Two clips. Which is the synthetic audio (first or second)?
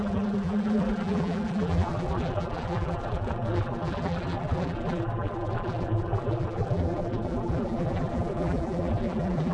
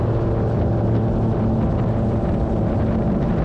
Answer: first